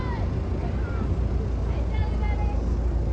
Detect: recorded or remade recorded